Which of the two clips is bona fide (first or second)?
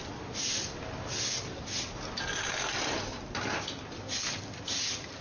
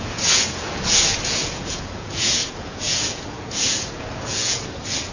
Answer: first